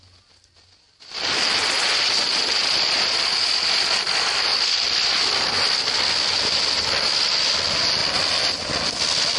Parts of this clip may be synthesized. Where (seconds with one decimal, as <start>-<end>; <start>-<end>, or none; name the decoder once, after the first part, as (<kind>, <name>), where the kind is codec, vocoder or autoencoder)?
none